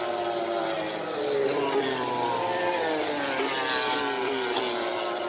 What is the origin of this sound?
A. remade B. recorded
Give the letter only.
B